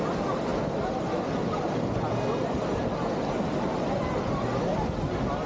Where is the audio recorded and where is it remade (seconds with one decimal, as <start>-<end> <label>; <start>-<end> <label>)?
0.0-5.5 recorded